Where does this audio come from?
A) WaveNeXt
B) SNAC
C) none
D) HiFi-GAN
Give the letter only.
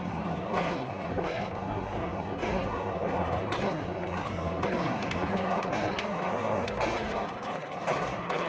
B